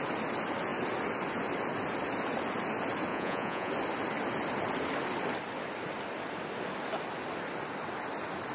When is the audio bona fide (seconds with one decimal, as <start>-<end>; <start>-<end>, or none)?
0.0-3.1; 3.7-8.5